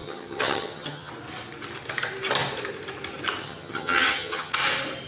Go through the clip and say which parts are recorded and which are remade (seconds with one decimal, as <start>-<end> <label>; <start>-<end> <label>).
0.0-1.1 remade; 1.1-3.4 recorded; 3.4-4.5 remade; 4.5-5.1 recorded